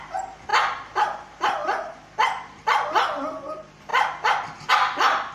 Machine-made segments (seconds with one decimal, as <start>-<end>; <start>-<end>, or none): none